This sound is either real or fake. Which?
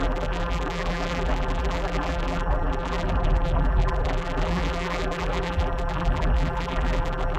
fake